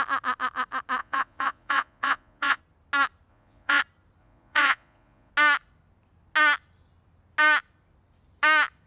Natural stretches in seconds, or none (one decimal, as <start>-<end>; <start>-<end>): 0.0-1.0; 2.6-3.3; 3.8-4.2; 5.3-8.9